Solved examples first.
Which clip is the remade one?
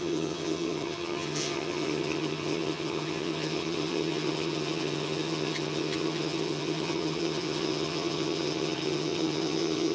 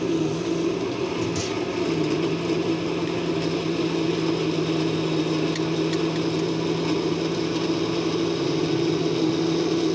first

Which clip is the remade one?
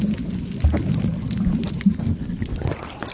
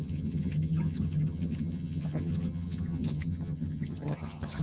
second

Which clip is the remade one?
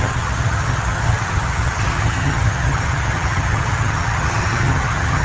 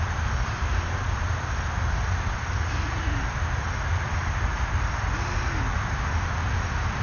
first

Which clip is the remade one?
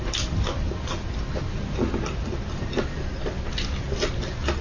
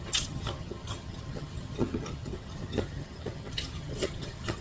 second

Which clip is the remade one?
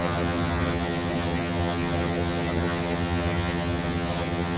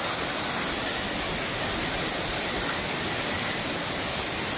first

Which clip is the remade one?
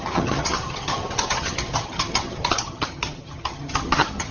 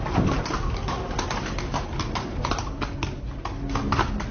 first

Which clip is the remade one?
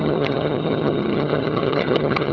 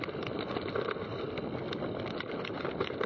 first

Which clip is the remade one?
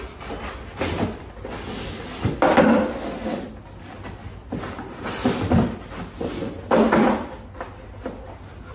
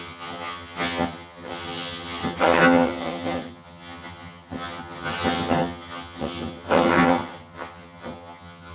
second